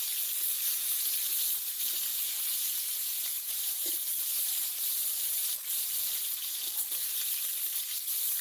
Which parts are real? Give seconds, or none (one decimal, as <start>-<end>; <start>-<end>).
0.0-2.1; 3.9-8.4